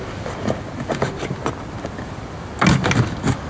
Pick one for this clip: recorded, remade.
recorded